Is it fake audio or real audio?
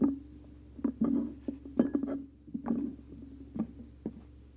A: fake